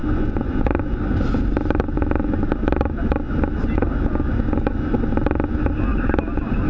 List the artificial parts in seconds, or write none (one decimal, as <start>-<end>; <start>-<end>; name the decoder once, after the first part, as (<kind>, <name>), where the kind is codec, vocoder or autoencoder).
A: 0.0-0.9 (vocoder, Vocos)